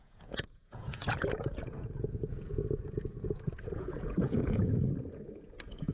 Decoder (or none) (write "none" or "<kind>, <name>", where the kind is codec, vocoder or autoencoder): vocoder, Vocos